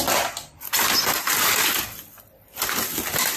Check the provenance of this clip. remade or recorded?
recorded